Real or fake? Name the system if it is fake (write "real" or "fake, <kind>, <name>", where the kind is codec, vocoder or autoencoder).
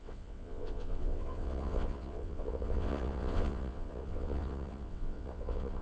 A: fake, vocoder, WaveNeXt